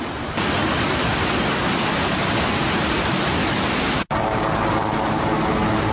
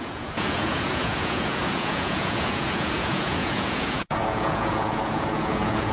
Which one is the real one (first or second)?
first